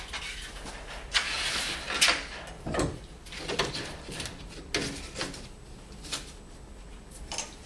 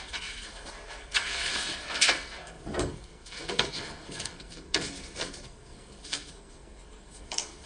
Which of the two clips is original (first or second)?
first